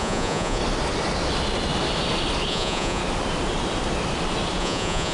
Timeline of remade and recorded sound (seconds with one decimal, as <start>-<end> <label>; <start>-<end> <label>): 0.0-0.6 remade; 0.6-2.5 recorded; 2.5-3.0 remade; 3.0-4.6 recorded; 4.6-5.1 remade